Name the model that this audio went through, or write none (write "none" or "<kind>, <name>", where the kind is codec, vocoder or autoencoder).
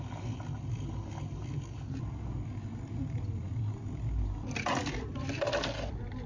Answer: none